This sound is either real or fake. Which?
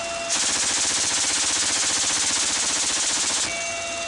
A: real